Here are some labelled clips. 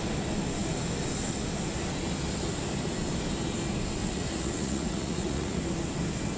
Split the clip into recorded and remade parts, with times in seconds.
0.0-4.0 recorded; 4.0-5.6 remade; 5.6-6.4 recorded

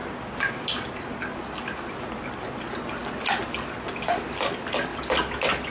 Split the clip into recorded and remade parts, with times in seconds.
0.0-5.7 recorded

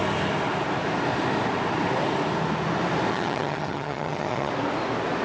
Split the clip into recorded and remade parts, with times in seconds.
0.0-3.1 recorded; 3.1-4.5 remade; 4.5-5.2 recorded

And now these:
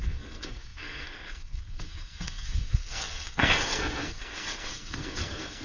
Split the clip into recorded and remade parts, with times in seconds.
0.0-5.6 remade

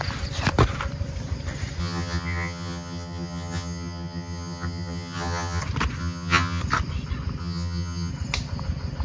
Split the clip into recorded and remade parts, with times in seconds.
0.0-1.8 recorded; 1.8-5.6 remade; 5.6-6.0 recorded; 6.0-6.6 remade; 6.6-7.4 recorded; 7.4-8.1 remade; 8.1-9.0 recorded